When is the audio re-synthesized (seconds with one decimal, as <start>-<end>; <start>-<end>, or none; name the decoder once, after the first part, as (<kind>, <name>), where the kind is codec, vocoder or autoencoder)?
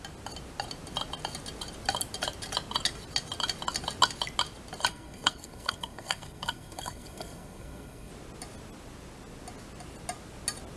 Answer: 4.9-8.1 (codec, SNAC)